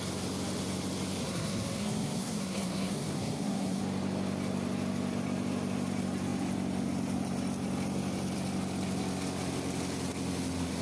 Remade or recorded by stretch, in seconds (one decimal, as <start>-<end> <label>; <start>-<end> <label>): 0.0-1.2 recorded; 1.2-3.8 remade; 3.8-10.8 recorded